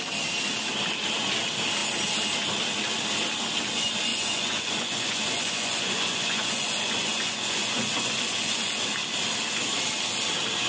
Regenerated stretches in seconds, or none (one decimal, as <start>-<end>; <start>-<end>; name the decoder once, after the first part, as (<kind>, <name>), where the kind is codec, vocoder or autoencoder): 4.1-8.9 (vocoder, Vocos)